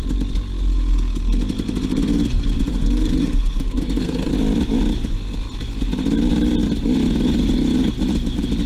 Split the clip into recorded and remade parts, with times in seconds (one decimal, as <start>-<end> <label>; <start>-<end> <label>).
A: 0.0-2.7 recorded; 2.7-4.3 remade; 4.3-8.7 recorded